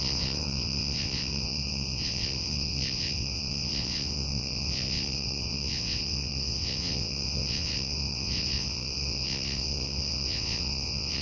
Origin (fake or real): fake